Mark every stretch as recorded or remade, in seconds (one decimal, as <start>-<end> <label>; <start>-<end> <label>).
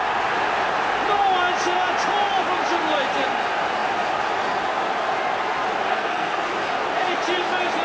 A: 0.0-5.9 recorded; 5.9-6.5 remade; 6.5-7.8 recorded